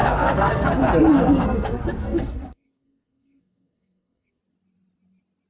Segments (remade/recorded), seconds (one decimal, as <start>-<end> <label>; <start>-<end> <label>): 0.0-0.7 remade; 0.7-1.1 recorded; 1.1-4.4 remade; 4.4-5.5 recorded